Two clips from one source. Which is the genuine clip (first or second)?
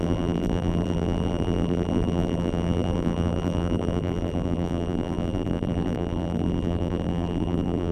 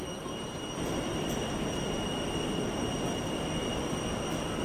second